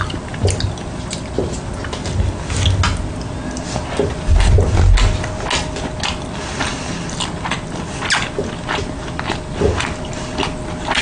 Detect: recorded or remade recorded